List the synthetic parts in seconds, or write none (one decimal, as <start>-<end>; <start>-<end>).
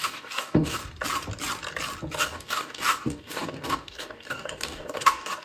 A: 0.0-0.8; 2.2-5.4